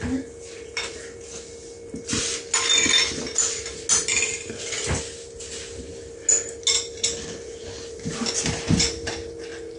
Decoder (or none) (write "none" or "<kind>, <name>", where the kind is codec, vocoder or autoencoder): none